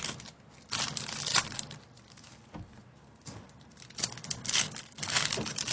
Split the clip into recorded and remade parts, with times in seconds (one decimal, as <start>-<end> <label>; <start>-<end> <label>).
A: 0.0-5.7 recorded